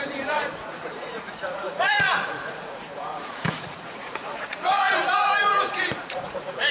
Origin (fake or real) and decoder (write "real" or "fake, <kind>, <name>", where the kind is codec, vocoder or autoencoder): fake, vocoder, Vocos